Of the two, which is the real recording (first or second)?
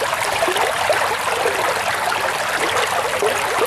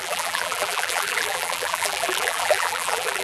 first